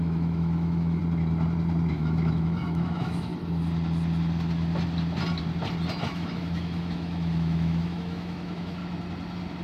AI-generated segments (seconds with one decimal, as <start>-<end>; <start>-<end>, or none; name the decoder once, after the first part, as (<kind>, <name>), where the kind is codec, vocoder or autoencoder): 0.0-1.0 (autoencoder, DAC-VAE); 1.9-3.3; 6.0-8.8